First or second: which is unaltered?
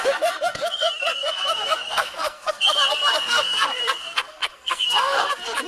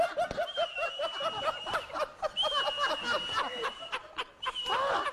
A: second